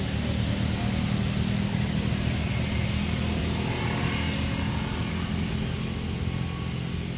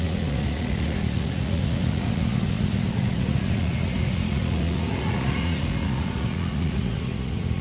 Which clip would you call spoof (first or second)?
second